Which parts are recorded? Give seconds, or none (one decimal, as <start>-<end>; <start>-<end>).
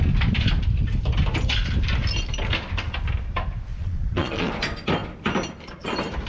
0.0-3.7; 4.5-6.3